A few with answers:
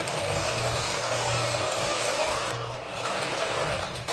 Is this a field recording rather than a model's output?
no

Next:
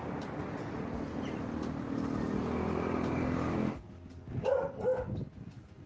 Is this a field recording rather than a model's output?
yes